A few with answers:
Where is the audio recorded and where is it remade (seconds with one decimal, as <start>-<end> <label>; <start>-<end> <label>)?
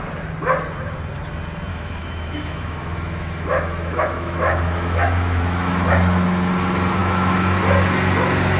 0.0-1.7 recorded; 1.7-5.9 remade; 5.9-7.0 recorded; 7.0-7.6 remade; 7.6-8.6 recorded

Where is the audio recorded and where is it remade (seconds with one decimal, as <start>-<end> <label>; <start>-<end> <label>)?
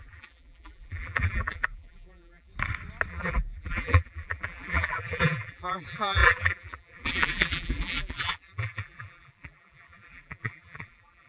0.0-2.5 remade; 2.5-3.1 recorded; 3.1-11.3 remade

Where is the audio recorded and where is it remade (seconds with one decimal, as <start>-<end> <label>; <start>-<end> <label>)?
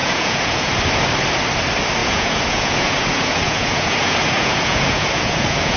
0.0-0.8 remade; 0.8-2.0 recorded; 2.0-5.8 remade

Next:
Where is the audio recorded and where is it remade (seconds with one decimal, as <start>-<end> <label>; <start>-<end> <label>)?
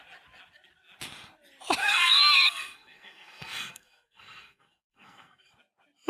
0.0-1.8 recorded; 1.8-5.5 remade; 5.5-6.1 recorded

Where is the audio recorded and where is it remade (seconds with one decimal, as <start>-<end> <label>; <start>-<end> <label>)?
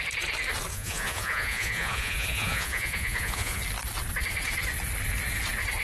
0.0-0.7 recorded; 0.7-3.6 remade; 3.6-5.8 recorded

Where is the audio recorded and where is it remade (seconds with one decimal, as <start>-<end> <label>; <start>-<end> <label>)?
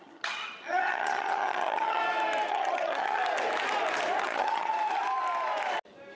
0.0-2.0 remade; 2.0-2.5 recorded; 2.5-3.2 remade; 3.2-4.2 recorded; 4.2-4.7 remade; 4.7-6.2 recorded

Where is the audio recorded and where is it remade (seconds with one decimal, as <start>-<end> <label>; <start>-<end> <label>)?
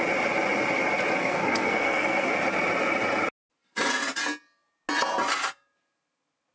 0.0-1.2 recorded; 1.2-2.3 remade; 2.3-6.5 recorded